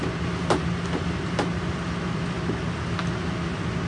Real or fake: real